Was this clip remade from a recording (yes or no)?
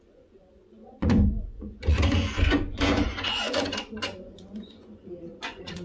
yes